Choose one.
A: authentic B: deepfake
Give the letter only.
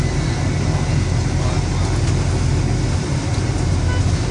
A